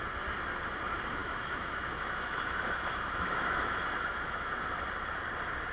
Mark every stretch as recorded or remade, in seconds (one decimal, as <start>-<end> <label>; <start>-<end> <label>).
0.0-1.2 recorded; 1.2-4.6 remade; 4.6-5.7 recorded